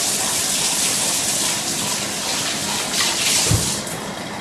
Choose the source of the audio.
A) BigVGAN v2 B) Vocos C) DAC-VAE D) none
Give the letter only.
D